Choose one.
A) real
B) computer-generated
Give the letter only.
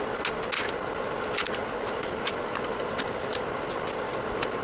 A